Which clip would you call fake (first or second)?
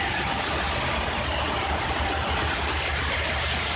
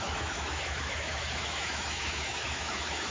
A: second